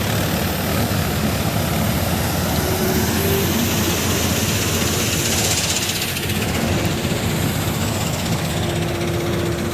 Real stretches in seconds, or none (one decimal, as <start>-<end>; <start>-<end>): 0.0-0.7; 1.4-6.1; 6.7-7.8; 8.5-9.7